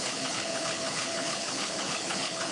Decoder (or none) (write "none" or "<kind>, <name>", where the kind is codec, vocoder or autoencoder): codec, HILCodec